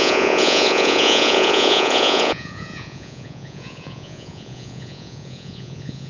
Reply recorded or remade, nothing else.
remade